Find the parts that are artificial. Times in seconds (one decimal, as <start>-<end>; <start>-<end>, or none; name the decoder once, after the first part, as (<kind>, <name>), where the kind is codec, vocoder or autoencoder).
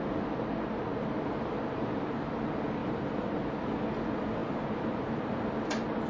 2.8-4.0 (vocoder, BigVGAN v2); 4.4-5.5